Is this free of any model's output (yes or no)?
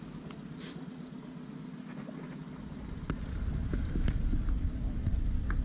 yes